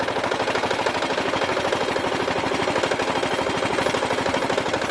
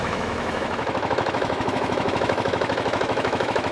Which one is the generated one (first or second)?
second